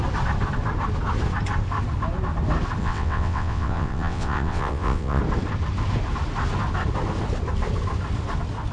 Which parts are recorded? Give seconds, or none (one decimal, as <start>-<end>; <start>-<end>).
0.0-2.8; 5.2-8.7